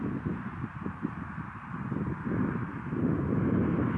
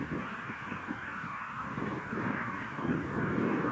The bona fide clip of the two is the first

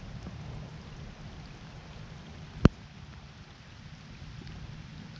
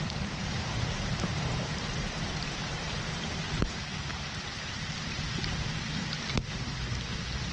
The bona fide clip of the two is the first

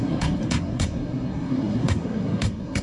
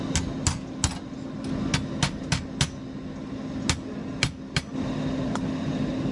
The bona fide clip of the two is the second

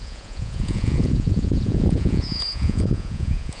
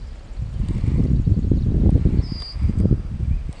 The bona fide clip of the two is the second